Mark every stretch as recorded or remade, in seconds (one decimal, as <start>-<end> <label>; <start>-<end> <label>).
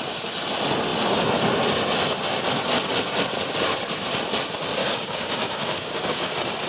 0.0-4.8 recorded; 4.8-6.3 remade; 6.3-6.7 recorded